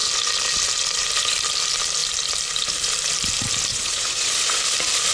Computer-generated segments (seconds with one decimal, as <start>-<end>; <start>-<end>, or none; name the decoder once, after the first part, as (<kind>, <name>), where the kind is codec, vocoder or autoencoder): 3.7-4.6 (vocoder, WaveNeXt)